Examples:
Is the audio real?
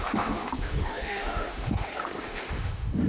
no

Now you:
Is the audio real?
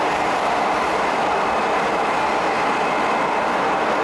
yes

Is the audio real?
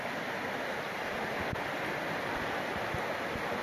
yes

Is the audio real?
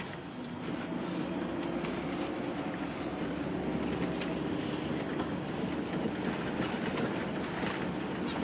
yes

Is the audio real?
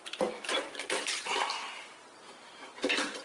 no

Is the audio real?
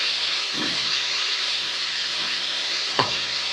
no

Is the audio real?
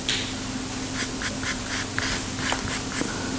yes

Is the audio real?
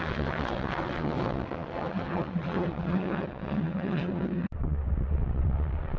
no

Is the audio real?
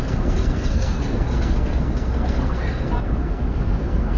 no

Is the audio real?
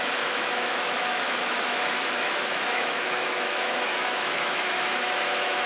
no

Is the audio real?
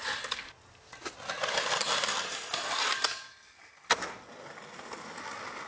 yes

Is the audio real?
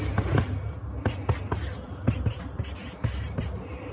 yes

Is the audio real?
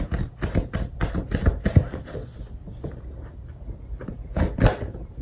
yes